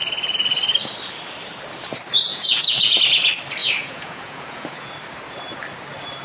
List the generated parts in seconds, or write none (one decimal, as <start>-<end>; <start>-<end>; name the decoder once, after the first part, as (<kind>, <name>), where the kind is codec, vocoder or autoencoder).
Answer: 2.3-3.0 (vocoder, Vocos); 3.6-4.9